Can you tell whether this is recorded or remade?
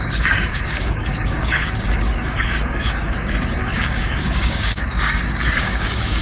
remade